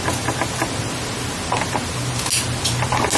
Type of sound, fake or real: real